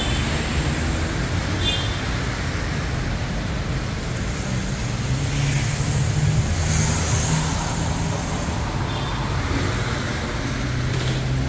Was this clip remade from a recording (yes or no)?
no